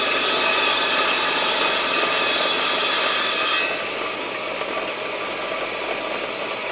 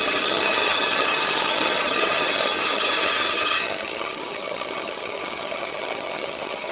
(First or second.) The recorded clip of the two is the first